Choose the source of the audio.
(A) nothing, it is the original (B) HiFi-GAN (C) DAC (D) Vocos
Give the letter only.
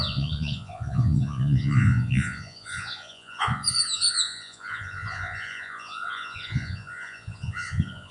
D